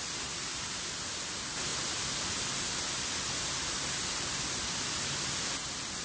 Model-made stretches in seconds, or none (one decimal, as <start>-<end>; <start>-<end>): none